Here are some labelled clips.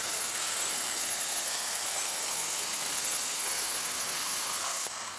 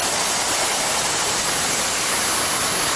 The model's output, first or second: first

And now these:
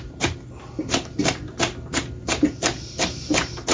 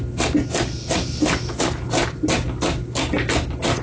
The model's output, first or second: first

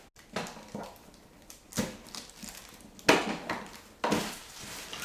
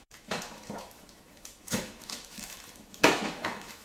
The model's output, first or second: second